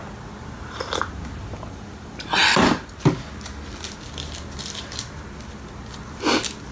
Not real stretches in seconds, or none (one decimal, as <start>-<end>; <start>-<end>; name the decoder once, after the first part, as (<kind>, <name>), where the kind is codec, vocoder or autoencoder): none